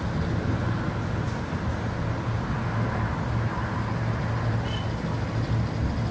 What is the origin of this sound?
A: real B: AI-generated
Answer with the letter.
A